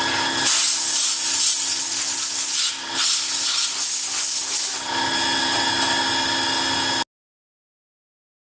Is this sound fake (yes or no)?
no